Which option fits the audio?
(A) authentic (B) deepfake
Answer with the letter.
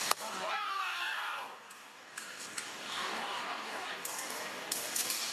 B